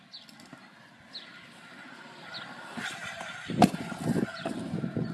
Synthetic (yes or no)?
no